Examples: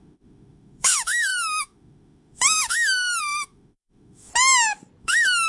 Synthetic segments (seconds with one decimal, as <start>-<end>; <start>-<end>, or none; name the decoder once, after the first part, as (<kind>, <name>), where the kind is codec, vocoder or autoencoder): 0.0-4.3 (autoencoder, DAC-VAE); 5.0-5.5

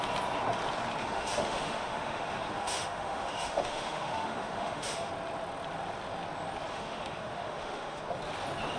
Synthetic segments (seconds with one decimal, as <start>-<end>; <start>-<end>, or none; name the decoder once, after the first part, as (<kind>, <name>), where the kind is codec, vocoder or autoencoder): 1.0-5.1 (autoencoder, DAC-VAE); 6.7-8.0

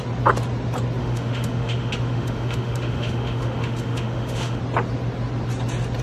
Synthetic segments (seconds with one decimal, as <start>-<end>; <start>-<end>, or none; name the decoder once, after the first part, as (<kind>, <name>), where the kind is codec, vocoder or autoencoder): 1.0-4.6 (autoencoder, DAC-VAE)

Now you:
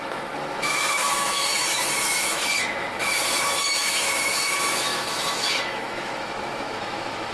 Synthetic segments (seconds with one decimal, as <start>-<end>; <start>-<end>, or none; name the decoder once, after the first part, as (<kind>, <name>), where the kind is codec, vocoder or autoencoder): 0.0-7.3 (autoencoder, DAC-VAE)

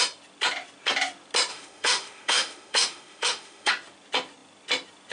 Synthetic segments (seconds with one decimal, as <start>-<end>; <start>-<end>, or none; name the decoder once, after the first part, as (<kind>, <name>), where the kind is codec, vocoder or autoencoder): 1.5-3.7 (autoencoder, DAC-VAE)

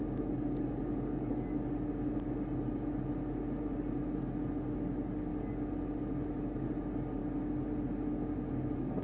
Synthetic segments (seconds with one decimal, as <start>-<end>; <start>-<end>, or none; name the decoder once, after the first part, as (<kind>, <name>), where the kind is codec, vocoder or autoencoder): none